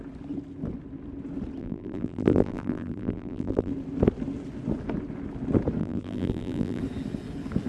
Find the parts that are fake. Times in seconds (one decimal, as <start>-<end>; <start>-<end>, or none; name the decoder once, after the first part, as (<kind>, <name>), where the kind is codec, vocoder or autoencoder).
1.6-3.7 (vocoder, BigVGAN v2); 5.8-6.8